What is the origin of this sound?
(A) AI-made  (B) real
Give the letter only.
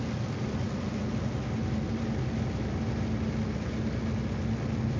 B